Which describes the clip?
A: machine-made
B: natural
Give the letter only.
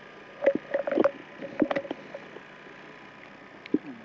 B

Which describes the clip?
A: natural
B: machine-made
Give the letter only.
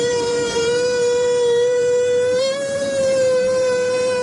B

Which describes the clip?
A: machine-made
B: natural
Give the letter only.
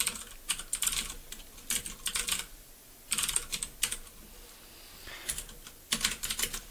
B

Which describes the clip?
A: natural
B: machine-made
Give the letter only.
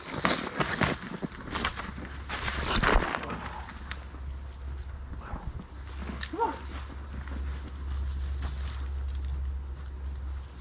A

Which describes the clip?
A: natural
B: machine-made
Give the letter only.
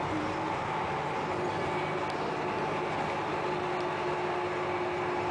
A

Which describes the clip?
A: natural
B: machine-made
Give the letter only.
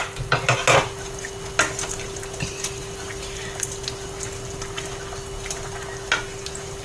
A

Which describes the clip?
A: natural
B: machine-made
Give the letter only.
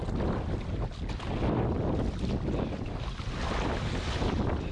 A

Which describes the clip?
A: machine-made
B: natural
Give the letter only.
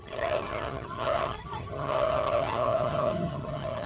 A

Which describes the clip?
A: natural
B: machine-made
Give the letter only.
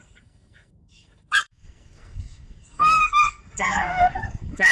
B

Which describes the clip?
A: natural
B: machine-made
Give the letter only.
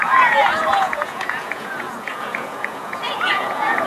B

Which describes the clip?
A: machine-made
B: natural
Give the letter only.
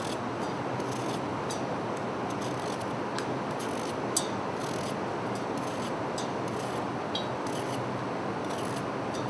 B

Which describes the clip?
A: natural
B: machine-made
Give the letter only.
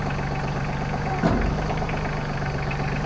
B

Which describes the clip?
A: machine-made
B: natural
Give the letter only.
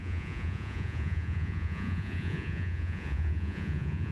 A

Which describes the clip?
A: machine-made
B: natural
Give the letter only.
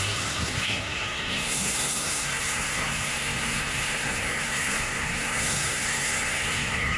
A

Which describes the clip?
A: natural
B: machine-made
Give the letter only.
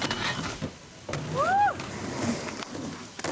A